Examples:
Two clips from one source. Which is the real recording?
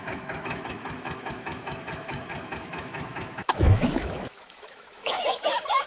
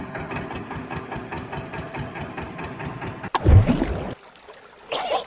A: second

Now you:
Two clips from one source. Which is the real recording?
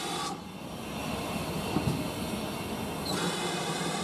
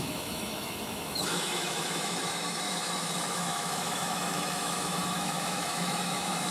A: first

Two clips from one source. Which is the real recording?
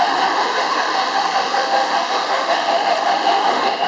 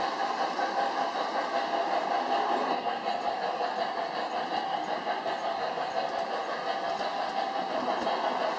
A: second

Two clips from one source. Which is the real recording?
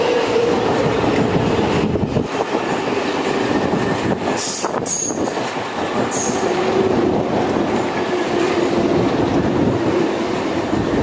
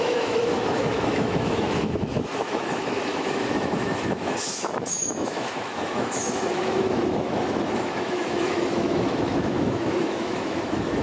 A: first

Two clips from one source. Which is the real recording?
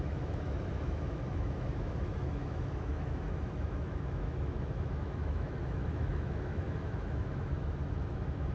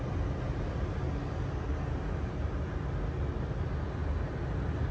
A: second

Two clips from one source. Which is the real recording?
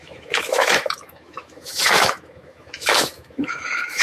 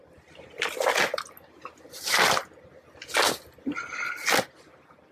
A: second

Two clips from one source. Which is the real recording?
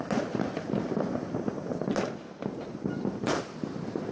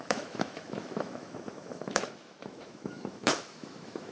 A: first